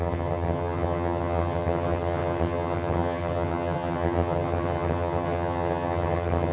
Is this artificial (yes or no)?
yes